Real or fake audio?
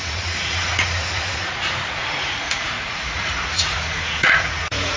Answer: fake